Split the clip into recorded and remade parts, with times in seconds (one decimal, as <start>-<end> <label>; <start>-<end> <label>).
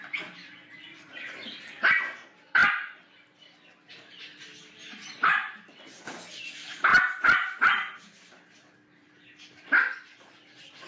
0.0-4.8 recorded; 4.8-5.3 remade; 5.3-10.9 recorded